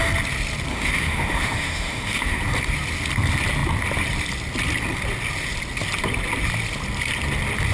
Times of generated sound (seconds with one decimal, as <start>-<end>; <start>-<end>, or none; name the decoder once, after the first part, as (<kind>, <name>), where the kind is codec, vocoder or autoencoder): 0.7-2.4 (autoencoder, DAC-VAE)